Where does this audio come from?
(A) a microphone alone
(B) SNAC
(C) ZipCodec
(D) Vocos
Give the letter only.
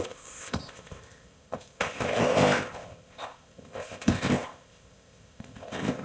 C